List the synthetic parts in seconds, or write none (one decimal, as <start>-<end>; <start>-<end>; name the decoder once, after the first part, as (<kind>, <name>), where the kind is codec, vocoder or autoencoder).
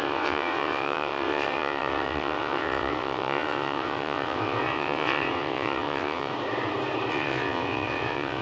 0.0-6.3 (vocoder, WaveNeXt); 7.1-8.4